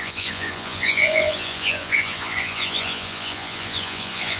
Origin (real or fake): fake